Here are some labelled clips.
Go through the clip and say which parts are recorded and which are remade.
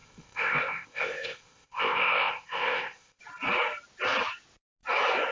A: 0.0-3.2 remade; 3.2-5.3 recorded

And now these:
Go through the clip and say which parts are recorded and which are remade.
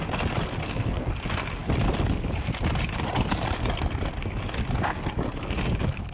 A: 0.0-0.6 recorded; 0.6-1.1 remade; 1.1-6.1 recorded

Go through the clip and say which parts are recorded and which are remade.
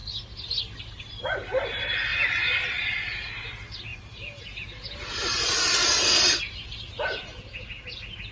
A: 0.0-8.3 recorded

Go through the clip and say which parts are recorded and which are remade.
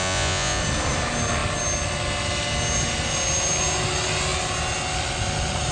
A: 0.0-0.6 remade; 0.6-5.7 recorded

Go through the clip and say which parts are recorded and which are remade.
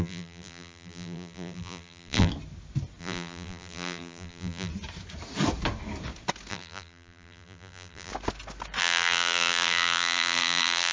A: 0.0-2.3 remade; 2.3-3.0 recorded; 3.0-4.7 remade; 4.7-6.5 recorded; 6.5-8.1 remade; 8.1-8.8 recorded; 8.8-10.9 remade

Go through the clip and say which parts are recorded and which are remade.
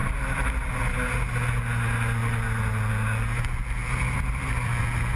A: 0.0-3.8 recorded; 3.8-4.8 remade; 4.8-5.2 recorded